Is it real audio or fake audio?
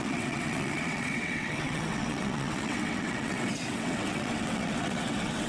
fake